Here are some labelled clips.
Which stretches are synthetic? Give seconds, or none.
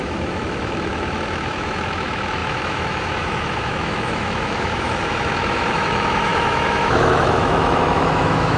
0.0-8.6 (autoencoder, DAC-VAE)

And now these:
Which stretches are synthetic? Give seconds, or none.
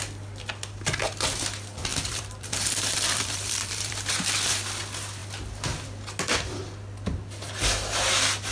1.9-4.1 (vocoder, BigVGAN v2)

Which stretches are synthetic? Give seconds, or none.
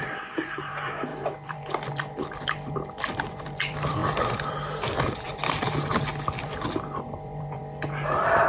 0.0-7.6 (vocoder, BigVGAN v2)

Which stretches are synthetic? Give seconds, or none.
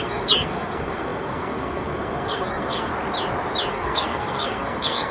0.0-2.9 (codec, SNAC); 3.7-5.1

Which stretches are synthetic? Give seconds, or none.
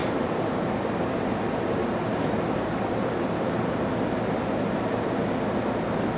0.0-3.7 (vocoder, BigVGAN v2)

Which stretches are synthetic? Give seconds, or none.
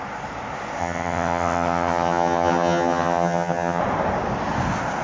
0.8-3.8 (vocoder, HiFi-GAN)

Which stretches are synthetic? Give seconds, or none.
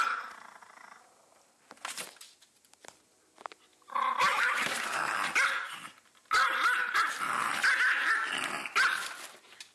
none